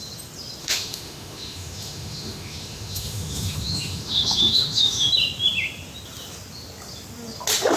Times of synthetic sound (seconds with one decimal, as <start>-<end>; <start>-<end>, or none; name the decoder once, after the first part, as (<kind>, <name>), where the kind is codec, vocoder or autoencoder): 0.6-5.1 (autoencoder, DAC-VAE)